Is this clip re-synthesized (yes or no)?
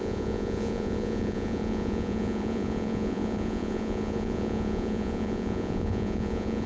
yes